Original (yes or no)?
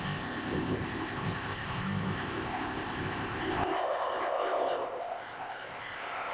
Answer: no